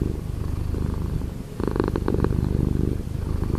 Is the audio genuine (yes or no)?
yes